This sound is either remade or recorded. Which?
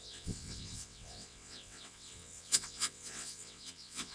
remade